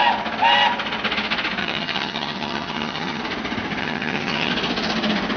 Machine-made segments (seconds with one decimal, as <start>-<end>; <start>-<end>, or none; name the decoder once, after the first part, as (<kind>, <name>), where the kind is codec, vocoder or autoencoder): 1.6-3.2 (vocoder, HiFi-GAN); 3.8-4.5